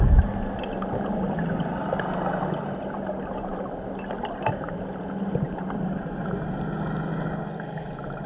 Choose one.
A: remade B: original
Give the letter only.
B